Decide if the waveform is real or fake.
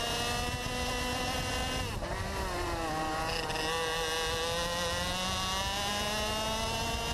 real